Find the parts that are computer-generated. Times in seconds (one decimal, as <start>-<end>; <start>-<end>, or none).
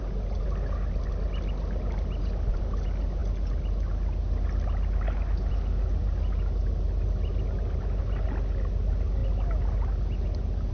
none